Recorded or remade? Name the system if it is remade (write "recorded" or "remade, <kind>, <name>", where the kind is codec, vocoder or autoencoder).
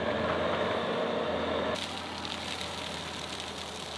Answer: recorded